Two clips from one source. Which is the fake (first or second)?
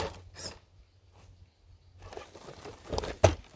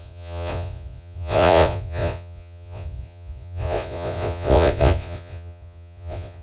second